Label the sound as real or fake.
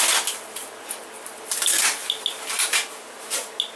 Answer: real